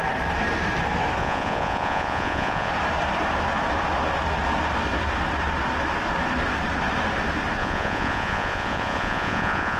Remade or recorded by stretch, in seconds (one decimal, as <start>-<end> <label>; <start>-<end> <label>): 0.0-1.2 recorded; 1.2-2.7 remade; 2.7-7.6 recorded; 7.6-9.8 remade